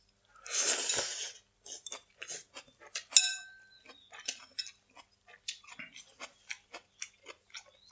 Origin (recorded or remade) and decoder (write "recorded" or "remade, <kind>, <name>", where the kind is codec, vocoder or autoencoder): recorded